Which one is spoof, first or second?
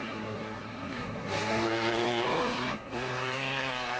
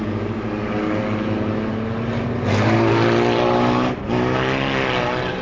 first